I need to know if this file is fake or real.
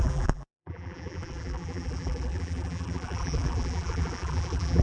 fake